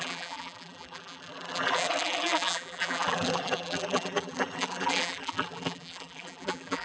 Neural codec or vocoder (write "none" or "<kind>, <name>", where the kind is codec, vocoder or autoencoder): vocoder, BigVGAN v2